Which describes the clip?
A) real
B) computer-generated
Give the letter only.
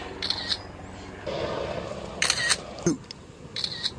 A